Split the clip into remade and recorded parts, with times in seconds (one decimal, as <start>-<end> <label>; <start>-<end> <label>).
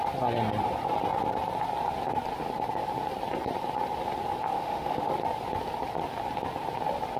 0.0-4.5 recorded; 4.5-5.1 remade; 5.1-7.2 recorded